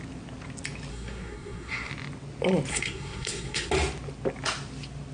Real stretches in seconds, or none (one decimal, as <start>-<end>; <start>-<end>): 0.0-0.9; 1.9-2.7; 3.7-5.1